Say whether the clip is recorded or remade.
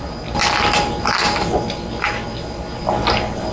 recorded